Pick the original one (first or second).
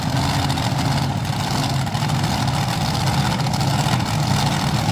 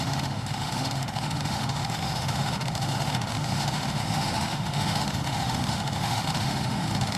first